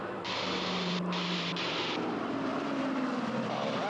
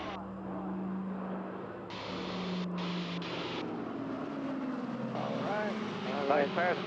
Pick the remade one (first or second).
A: first